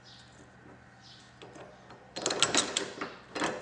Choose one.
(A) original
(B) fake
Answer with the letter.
A